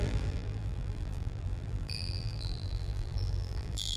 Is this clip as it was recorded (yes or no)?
no